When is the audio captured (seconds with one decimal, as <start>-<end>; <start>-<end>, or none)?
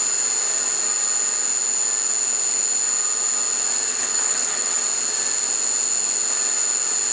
0.0-3.9; 4.8-7.1